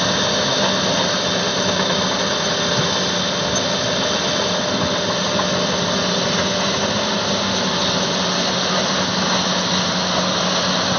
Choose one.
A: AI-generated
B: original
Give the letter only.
B